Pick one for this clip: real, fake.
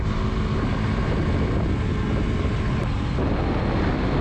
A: real